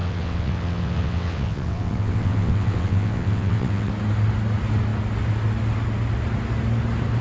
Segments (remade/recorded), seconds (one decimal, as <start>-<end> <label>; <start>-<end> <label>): 0.0-3.9 remade; 3.9-7.2 recorded